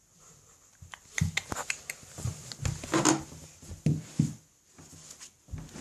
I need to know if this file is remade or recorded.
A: recorded